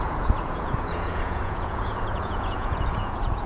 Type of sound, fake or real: fake